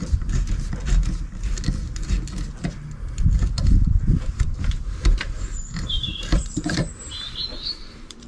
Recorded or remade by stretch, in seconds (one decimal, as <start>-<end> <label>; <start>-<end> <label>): 0.0-0.8 remade; 0.8-4.3 recorded; 4.3-8.3 remade